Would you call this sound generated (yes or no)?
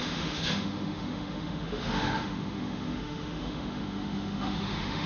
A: yes